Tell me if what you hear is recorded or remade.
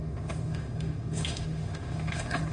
remade